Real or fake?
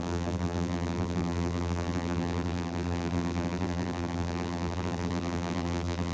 fake